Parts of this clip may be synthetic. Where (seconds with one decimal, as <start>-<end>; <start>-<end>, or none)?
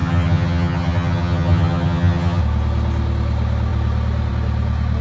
0.0-2.4